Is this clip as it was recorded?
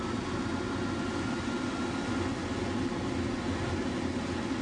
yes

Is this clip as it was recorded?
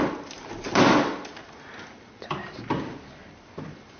yes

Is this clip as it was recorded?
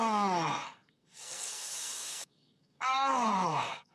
no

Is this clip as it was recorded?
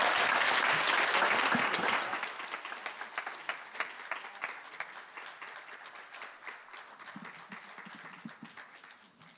yes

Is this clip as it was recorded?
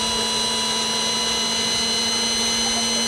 yes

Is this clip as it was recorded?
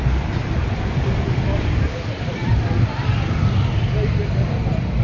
no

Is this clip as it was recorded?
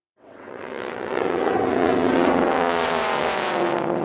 no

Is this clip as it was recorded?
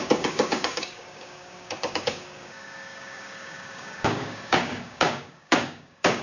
no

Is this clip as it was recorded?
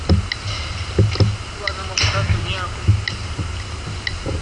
yes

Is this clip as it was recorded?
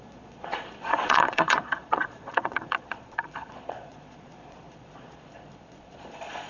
no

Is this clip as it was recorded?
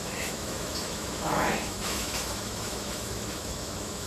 no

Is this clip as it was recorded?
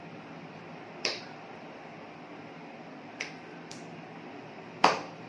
no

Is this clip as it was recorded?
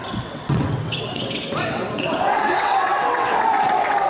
no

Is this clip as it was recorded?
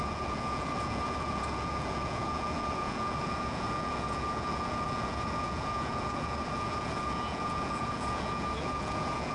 no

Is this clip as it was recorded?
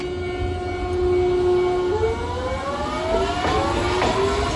yes